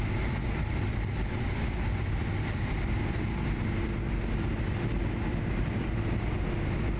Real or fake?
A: real